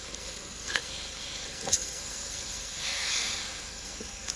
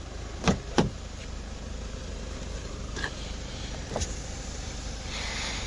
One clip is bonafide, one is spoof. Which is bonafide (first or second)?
second